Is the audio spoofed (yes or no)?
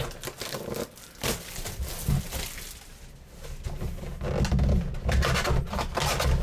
no